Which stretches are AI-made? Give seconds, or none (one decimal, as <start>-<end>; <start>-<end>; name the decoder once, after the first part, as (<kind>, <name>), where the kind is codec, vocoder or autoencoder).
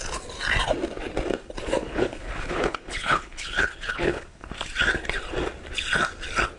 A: 1.8-4.5 (codec, HILCodec)